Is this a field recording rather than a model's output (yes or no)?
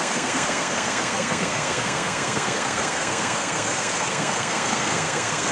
no